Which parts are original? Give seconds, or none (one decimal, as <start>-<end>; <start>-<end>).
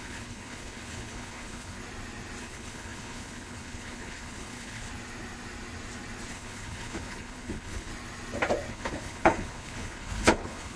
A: 1.8-2.4; 4.9-6.3; 7.9-8.7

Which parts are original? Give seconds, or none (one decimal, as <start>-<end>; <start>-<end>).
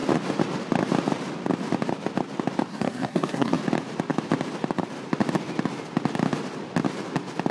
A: 0.0-2.7; 3.6-7.5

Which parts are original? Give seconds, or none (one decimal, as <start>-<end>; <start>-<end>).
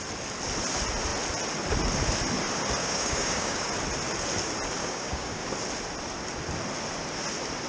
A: 0.0-2.8; 3.7-4.8; 5.5-7.7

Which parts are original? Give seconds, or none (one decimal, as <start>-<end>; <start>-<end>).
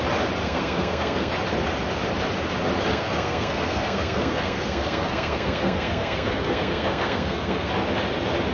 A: 0.0-0.4; 1.3-2.9; 7.7-8.5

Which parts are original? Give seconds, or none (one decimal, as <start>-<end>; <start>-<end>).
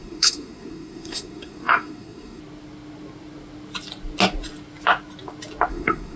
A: 2.4-5.7